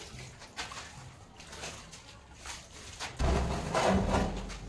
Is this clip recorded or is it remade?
recorded